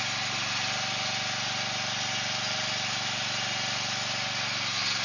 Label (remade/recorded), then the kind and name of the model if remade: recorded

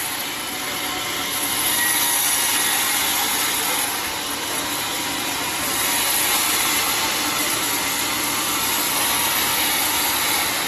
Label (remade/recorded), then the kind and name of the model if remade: recorded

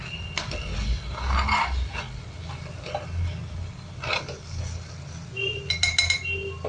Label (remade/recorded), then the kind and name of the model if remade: recorded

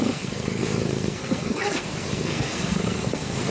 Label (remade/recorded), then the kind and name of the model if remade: remade, codec, SNAC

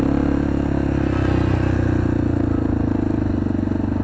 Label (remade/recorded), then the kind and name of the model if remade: recorded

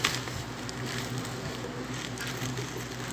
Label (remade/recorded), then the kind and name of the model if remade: recorded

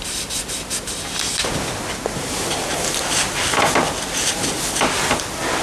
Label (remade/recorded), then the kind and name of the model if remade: recorded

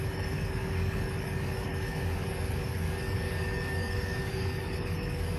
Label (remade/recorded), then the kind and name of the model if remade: remade, codec, DAC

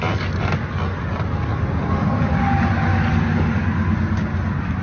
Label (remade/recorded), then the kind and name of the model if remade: recorded